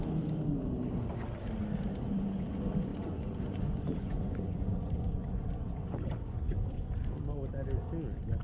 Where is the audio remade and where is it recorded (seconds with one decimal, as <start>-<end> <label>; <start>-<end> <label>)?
0.0-2.9 recorded; 2.9-6.9 remade; 6.9-8.4 recorded